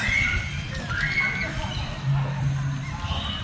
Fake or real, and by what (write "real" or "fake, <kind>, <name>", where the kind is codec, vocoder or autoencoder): real